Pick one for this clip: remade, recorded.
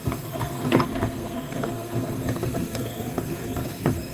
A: remade